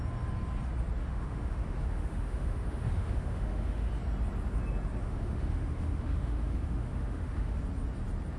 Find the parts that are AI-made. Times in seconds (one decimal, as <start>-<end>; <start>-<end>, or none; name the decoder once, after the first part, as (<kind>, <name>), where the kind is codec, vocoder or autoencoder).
1.0-3.9 (autoencoder, DAC-VAE); 5.0-7.6